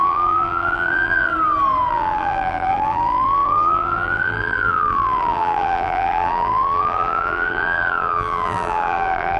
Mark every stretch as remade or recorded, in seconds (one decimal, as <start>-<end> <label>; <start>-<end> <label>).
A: 0.0-1.3 remade; 1.3-1.9 recorded; 1.9-9.4 remade